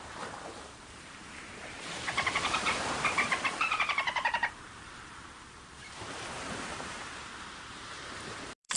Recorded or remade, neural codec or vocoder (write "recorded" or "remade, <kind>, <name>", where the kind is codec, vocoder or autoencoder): remade, vocoder, BigVGAN v2